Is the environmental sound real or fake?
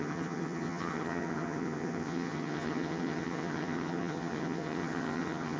fake